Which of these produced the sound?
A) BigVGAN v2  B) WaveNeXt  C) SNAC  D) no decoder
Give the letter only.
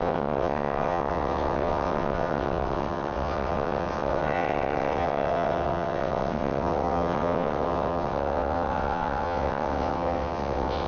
B